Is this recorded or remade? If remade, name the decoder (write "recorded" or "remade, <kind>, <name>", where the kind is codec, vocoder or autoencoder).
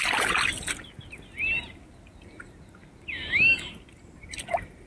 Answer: recorded